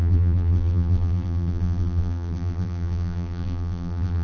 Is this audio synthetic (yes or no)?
yes